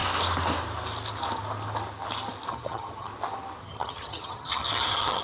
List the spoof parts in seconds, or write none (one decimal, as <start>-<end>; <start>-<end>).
2.5-3.1; 3.6-5.2